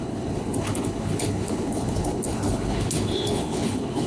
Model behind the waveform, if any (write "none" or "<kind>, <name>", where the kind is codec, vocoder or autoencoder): codec, HILCodec